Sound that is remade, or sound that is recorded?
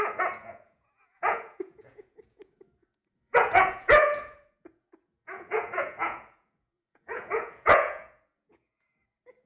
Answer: remade